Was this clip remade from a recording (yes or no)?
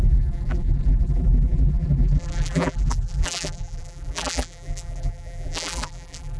yes